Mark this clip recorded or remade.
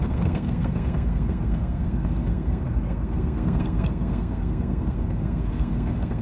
remade